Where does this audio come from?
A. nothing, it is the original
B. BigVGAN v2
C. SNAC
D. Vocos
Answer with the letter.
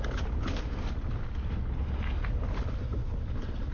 A